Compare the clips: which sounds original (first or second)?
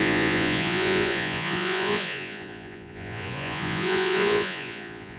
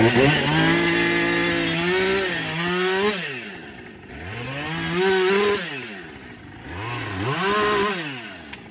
second